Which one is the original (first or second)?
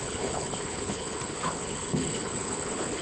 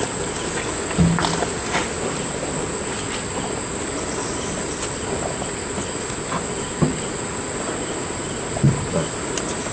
second